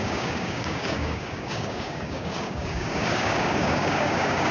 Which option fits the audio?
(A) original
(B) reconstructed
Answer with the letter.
B